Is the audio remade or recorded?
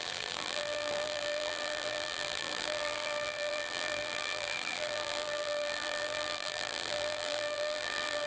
remade